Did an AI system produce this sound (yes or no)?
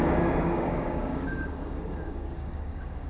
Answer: yes